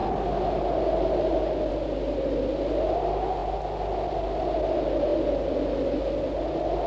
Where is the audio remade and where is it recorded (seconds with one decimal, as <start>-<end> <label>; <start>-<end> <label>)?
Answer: 0.0-6.9 recorded